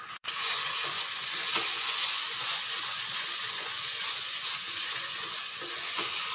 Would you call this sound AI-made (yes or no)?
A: yes